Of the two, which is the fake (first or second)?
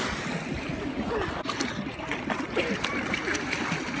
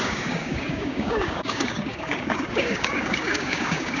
second